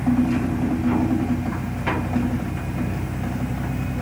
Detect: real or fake real